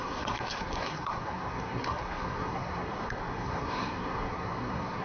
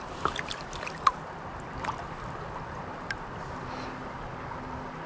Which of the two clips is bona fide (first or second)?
second